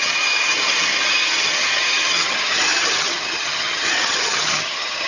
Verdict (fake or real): fake